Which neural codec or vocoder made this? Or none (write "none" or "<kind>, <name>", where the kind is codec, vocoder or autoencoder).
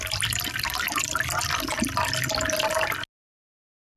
none